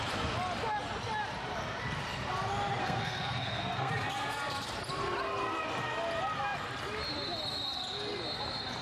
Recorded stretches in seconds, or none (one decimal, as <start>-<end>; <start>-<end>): 0.0-2.8; 3.9-8.8